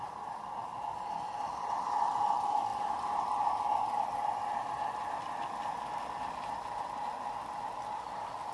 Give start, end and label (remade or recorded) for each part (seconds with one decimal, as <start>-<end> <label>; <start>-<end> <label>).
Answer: 0.0-8.5 recorded